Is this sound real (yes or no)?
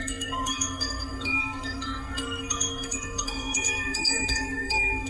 no